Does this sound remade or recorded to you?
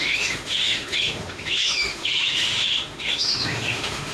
remade